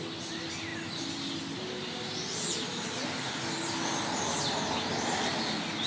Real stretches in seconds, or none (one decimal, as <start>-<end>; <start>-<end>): 0.0-5.9